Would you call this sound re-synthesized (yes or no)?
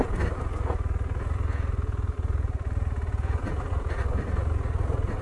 no